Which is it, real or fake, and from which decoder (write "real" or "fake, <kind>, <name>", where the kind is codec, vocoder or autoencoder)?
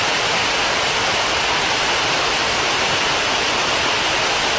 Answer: real